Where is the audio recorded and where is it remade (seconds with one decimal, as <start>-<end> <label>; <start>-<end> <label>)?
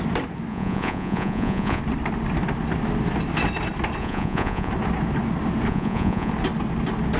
0.0-0.5 recorded; 0.5-1.8 remade; 1.8-4.0 recorded; 4.0-4.7 remade; 4.7-5.7 recorded; 5.7-6.3 remade; 6.3-7.2 recorded